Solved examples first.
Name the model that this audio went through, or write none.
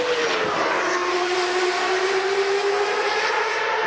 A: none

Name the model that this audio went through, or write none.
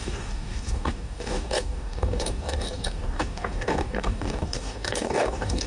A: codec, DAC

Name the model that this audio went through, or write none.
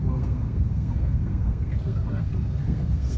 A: codec, SNAC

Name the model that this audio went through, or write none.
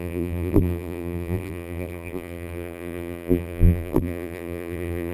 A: vocoder, BigVGAN v2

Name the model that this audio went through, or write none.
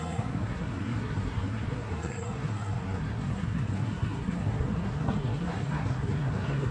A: codec, SNAC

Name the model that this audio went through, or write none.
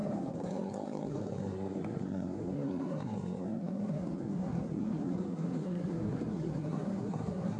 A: codec, SNAC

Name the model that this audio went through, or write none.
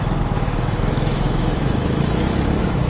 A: autoencoder, DAC-VAE